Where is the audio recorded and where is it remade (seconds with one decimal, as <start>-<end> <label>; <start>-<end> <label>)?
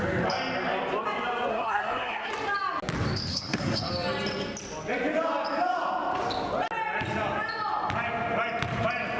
0.0-1.5 recorded; 1.5-2.3 remade; 2.3-3.3 recorded; 3.3-3.9 remade; 3.9-9.2 recorded